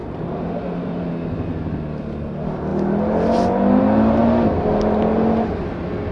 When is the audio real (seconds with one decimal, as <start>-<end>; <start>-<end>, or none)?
1.1-6.1